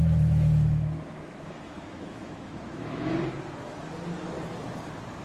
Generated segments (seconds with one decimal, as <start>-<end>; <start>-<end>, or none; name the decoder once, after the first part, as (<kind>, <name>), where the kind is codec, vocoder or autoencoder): 0.0-3.1 (autoencoder, DAC-VAE)